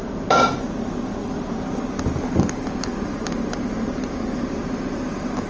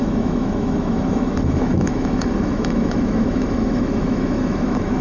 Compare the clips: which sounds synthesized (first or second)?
second